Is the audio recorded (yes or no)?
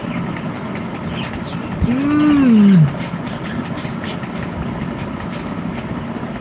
yes